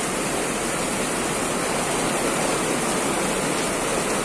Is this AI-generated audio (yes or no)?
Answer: no